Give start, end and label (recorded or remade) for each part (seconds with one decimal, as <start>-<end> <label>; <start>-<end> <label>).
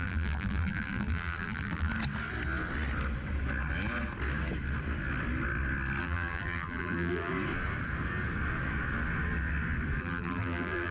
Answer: 0.0-1.9 remade; 1.9-6.0 recorded; 6.0-7.3 remade; 7.3-10.0 recorded; 10.0-10.9 remade